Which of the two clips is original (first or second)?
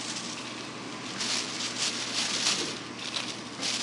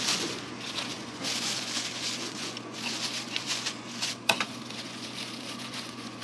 first